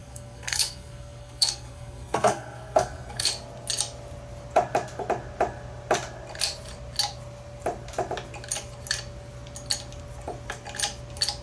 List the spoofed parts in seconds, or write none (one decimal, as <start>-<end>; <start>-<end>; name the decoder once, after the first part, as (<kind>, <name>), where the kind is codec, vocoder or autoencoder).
0.0-3.3 (codec, SNAC)